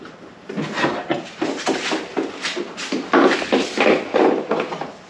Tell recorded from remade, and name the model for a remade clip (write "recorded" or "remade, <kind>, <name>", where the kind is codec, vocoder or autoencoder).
recorded